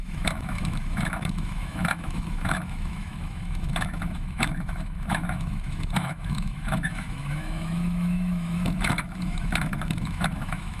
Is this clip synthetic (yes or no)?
yes